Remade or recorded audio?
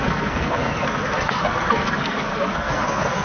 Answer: remade